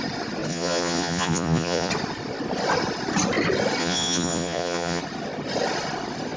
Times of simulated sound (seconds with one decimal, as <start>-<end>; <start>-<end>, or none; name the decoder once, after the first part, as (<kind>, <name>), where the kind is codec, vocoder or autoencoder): 0.5-1.9 (vocoder, Vocos); 3.8-5.0